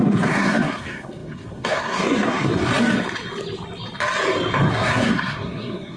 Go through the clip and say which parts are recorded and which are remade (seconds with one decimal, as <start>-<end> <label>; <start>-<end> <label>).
0.0-2.6 remade; 2.6-4.7 recorded; 4.7-6.0 remade